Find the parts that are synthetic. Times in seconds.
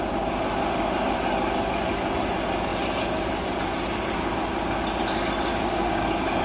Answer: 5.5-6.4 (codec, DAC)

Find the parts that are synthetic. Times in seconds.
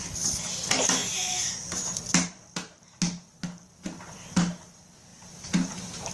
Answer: none